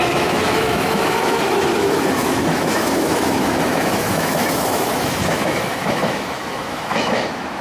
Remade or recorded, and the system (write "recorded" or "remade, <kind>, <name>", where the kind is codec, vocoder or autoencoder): remade, autoencoder, DAC-VAE